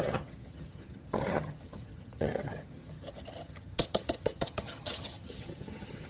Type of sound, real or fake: fake